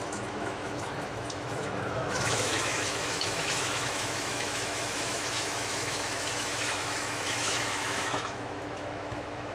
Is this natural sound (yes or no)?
no